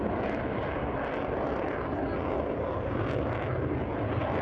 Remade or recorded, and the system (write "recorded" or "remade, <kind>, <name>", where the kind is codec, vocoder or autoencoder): recorded